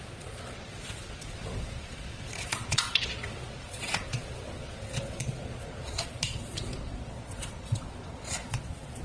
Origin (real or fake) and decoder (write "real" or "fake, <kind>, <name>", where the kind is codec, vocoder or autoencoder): fake, vocoder, Vocos